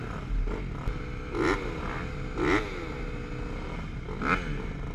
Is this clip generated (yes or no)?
no